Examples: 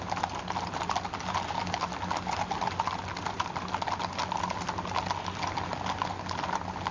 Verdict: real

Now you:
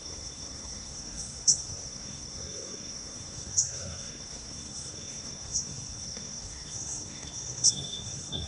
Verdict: fake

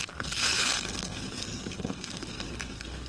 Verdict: fake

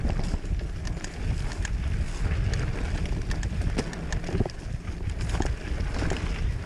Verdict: real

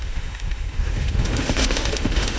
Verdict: fake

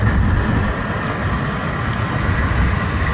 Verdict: real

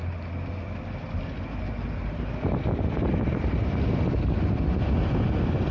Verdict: real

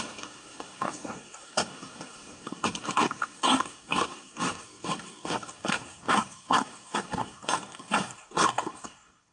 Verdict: fake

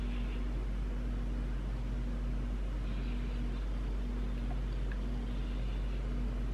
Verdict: real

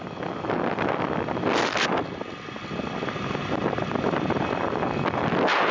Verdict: real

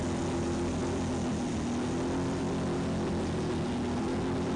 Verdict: real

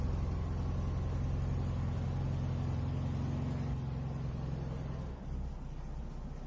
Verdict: real